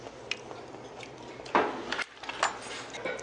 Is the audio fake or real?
real